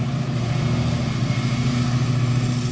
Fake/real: real